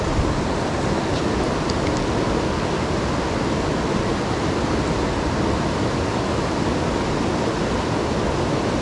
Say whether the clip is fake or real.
real